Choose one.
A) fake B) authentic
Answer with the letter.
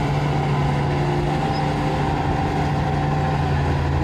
B